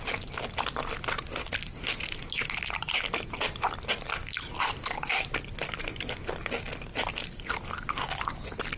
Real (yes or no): yes